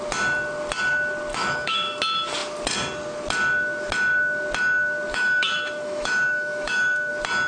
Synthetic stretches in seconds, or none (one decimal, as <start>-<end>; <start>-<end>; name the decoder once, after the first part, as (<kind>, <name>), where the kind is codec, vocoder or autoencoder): 1.3-2.0 (autoencoder, DAC-VAE); 5.1-7.1